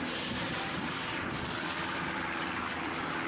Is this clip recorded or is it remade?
recorded